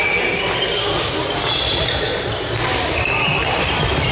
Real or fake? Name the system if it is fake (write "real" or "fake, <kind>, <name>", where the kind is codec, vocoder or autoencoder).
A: real